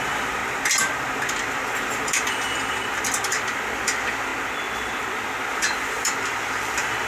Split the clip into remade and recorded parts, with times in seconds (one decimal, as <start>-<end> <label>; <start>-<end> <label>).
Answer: 0.0-0.4 remade; 0.4-1.9 recorded; 1.9-4.3 remade; 4.3-5.5 recorded; 5.5-7.1 remade